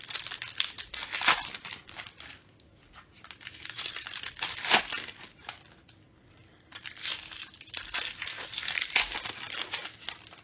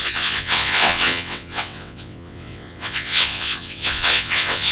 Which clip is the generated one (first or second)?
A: second